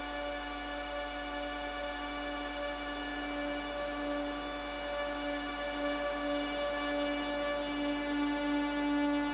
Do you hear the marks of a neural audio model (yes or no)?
no